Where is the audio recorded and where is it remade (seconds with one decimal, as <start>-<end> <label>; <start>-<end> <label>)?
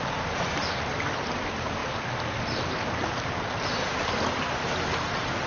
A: 0.0-5.5 recorded